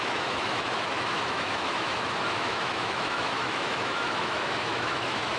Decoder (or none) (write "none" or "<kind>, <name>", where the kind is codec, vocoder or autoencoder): autoencoder, DAC-VAE